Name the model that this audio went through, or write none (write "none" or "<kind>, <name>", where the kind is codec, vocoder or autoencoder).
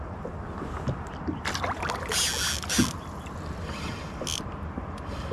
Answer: none